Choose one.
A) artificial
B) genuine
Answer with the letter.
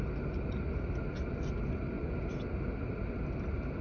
B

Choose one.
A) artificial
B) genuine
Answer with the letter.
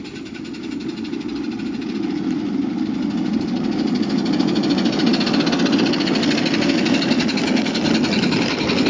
B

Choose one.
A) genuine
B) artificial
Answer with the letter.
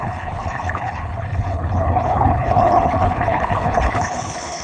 B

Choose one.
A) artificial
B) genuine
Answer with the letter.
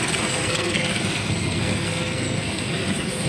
A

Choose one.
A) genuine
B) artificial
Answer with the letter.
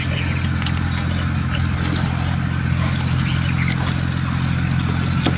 A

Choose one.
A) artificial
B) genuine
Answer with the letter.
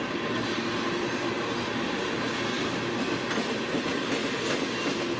B